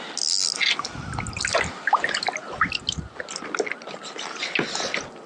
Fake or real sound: real